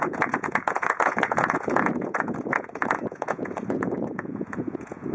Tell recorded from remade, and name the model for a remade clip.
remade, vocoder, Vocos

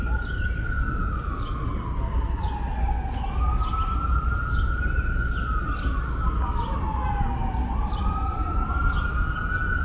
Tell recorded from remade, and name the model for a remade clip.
recorded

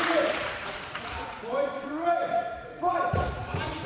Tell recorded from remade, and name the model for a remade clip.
remade, vocoder, Vocos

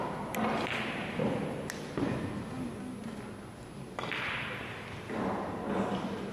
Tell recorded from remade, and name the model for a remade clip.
recorded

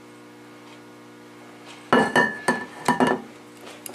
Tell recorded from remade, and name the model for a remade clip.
recorded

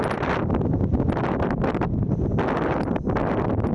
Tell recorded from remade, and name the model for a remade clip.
recorded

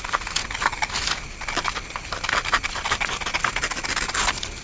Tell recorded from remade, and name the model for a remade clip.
recorded